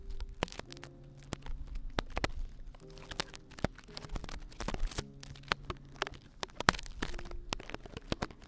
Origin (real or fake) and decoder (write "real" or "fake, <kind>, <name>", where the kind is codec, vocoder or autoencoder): real